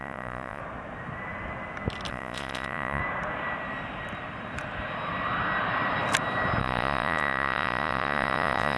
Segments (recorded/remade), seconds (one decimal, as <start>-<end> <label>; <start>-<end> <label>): 0.0-0.6 remade; 0.6-2.1 recorded; 2.1-3.0 remade; 3.0-6.6 recorded; 6.6-8.8 remade